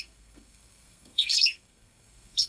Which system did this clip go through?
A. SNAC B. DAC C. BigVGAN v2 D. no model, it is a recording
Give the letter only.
A